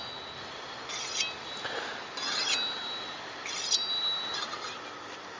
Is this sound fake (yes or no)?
no